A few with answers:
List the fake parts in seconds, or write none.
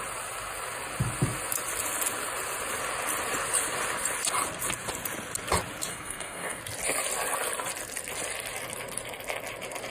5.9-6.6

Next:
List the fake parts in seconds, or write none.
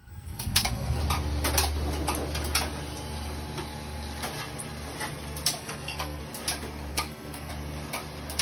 0.0-1.0; 5.6-6.2; 6.9-7.5